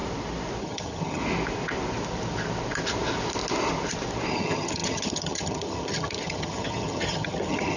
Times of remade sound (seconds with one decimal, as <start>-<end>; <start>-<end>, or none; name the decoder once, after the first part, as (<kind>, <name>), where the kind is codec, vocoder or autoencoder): 0.6-1.2 (vocoder, HiFi-GAN); 4.3-7.8